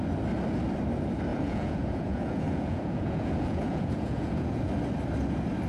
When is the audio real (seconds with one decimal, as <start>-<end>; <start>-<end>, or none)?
0.0-1.3; 4.7-5.7